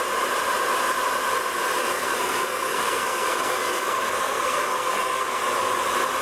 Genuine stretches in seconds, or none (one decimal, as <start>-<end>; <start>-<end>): 0.0-1.8; 5.4-6.2